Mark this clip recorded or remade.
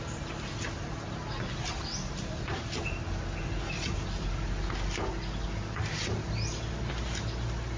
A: recorded